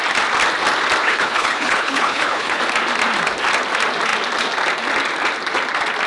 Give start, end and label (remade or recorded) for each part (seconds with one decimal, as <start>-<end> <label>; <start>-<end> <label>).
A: 0.0-1.0 recorded; 1.0-2.6 remade; 2.6-6.1 recorded